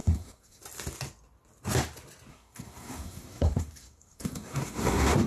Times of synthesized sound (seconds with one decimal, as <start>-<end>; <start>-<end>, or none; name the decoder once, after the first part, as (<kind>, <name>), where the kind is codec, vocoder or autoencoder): 0.0-0.6 (codec, SNAC); 2.3-5.3